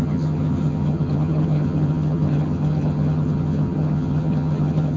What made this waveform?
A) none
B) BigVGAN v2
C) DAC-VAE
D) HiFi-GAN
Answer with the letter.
D